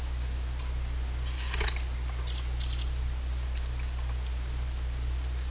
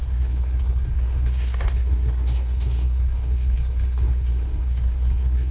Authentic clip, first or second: first